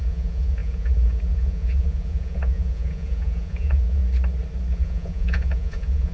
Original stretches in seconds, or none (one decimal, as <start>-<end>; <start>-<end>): 4.0-4.7